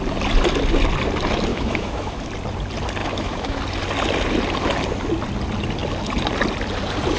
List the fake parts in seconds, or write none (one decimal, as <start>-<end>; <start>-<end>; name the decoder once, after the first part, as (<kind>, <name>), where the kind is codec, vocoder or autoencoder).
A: 1.5-2.2 (autoencoder, DAC-VAE); 3.0-3.6